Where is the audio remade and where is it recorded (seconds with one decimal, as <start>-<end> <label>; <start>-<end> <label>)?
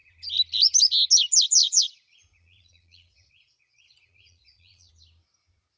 0.0-1.6 recorded; 1.6-4.9 remade; 4.9-5.8 recorded